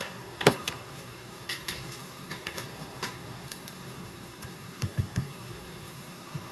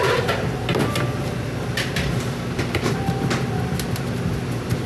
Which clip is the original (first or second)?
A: second